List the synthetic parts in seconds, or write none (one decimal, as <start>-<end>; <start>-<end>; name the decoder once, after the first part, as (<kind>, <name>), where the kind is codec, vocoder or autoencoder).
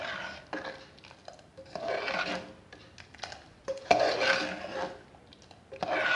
3.5-4.1 (vocoder, Vocos)